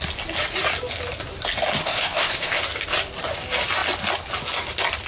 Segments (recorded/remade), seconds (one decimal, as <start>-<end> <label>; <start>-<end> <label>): 0.0-1.8 recorded; 1.8-2.6 remade; 2.6-5.1 recorded